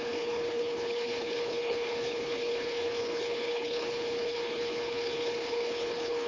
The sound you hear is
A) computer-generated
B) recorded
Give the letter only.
A